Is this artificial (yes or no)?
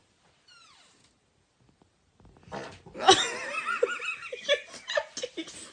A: no